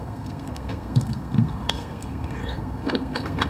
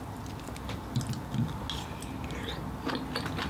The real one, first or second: second